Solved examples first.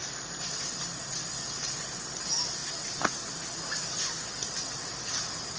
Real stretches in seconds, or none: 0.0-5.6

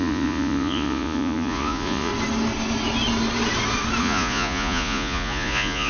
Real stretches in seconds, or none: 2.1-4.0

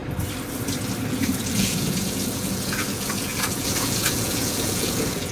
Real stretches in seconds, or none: 0.0-1.1

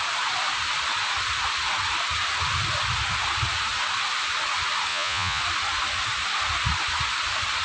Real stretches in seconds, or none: 0.0-4.9; 5.4-7.6